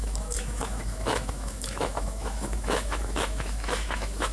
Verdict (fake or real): fake